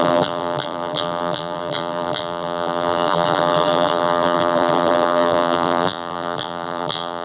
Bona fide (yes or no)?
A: no